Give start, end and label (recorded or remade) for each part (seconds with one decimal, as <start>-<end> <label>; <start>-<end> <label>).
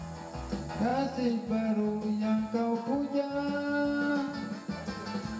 0.0-5.4 recorded